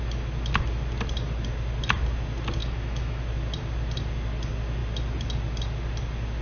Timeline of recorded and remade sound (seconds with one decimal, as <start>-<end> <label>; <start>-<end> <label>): 0.0-2.6 recorded; 2.6-3.2 remade; 3.2-6.4 recorded